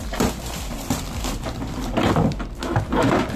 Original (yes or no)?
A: yes